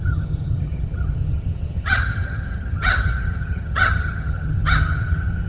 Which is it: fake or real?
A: fake